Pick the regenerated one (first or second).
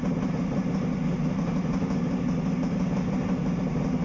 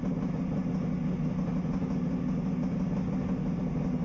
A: first